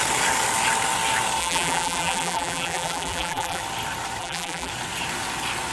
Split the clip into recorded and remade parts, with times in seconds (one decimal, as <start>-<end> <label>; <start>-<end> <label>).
0.0-1.4 recorded; 1.4-3.6 remade; 3.6-4.2 recorded; 4.2-4.7 remade; 4.7-5.7 recorded